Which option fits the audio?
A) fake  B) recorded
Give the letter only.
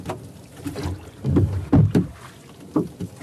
B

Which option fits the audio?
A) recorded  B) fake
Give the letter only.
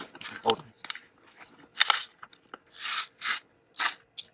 A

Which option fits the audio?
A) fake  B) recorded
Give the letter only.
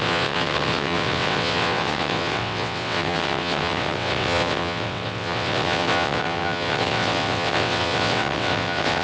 A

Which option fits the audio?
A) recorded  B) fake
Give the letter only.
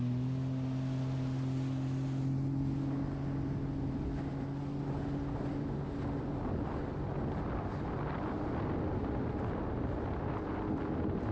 A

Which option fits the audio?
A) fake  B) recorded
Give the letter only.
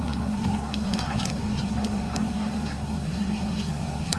A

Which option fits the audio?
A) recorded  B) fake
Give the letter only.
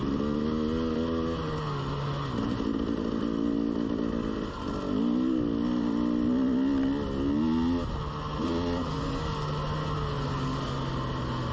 A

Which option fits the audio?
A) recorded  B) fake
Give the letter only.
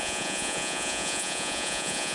B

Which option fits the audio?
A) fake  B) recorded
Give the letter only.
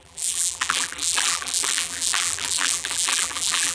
A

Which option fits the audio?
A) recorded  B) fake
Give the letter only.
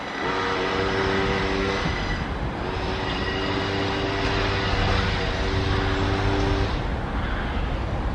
A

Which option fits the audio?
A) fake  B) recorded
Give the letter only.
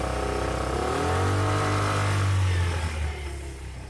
B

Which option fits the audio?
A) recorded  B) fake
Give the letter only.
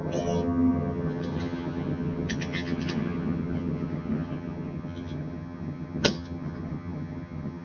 B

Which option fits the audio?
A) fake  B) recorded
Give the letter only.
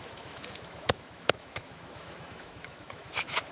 A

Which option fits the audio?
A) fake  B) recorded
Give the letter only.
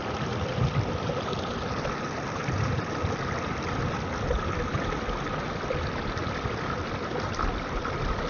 B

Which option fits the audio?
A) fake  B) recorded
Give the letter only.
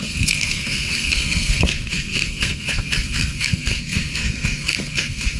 A